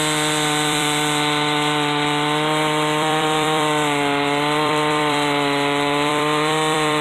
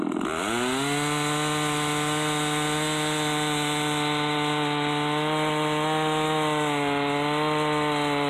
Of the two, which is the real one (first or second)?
second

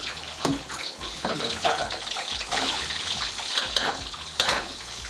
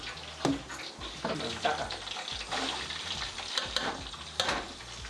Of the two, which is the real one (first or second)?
second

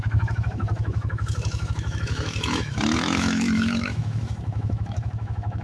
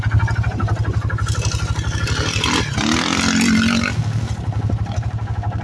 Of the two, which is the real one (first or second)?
second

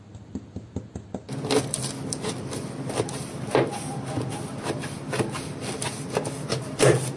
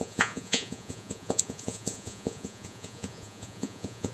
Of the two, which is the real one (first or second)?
first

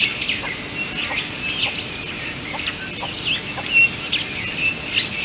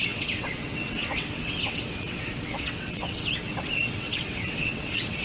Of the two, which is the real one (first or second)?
first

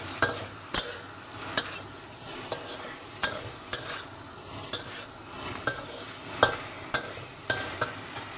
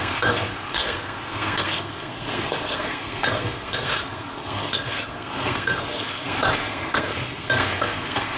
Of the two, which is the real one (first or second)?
first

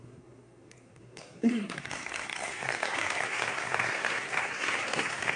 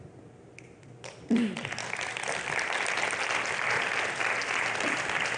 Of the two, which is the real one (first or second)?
second